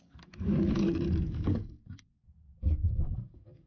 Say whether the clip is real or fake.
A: fake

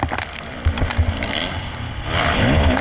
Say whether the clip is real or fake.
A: real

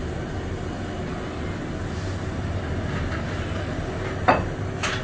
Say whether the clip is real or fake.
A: real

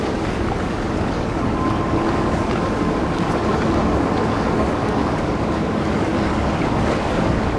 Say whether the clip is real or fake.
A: fake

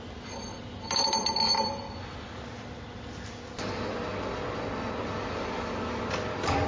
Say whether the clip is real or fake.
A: real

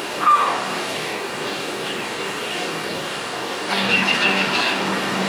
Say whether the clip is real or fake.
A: fake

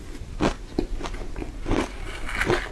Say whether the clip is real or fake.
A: real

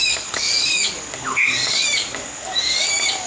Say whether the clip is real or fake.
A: fake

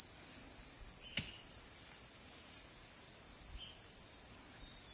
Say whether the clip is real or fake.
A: real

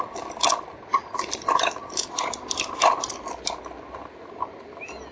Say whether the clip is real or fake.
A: real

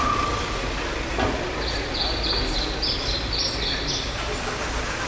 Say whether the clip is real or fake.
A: real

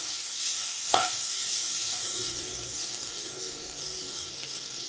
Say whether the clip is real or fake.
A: fake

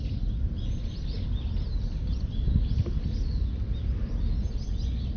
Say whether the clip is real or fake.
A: real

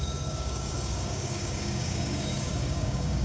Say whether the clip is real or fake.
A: fake